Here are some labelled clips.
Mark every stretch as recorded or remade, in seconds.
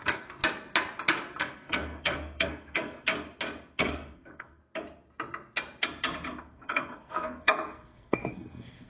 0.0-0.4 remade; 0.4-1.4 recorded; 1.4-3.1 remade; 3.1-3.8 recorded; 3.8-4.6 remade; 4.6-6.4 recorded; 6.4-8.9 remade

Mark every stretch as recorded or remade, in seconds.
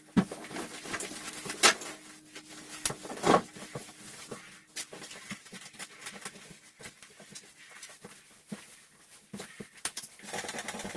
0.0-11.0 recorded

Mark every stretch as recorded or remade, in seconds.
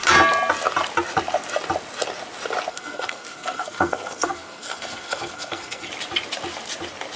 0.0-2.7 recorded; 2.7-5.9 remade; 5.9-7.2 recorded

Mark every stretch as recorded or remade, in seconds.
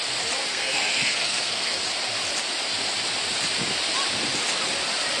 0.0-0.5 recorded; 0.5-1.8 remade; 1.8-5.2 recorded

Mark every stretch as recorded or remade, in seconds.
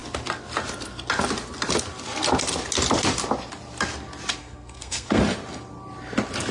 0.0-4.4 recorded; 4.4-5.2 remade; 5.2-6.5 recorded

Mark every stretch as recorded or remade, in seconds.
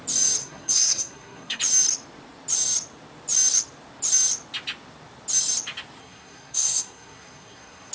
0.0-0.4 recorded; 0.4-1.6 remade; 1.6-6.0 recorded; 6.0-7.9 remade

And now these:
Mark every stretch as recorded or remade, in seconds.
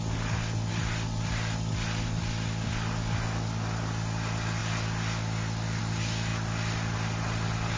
0.0-7.8 recorded